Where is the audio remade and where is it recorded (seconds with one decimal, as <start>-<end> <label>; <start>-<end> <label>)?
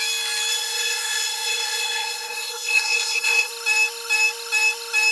0.0-0.5 recorded; 0.5-3.5 remade; 3.5-5.1 recorded